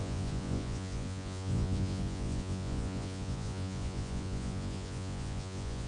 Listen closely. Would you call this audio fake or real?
fake